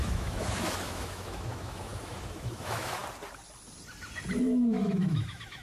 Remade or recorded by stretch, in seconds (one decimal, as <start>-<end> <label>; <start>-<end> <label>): 0.0-3.0 remade; 3.0-4.4 recorded; 4.4-5.6 remade